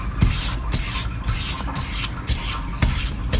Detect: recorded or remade recorded